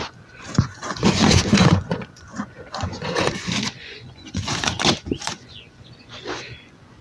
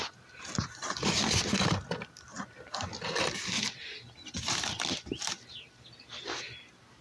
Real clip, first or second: second